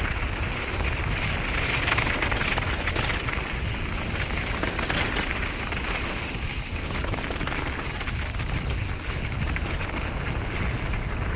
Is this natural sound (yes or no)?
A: yes